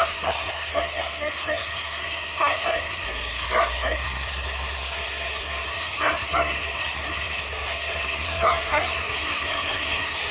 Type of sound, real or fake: fake